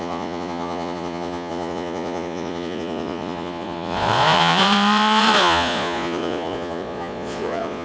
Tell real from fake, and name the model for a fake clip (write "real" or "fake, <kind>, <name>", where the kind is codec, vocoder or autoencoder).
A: fake, vocoder, Vocos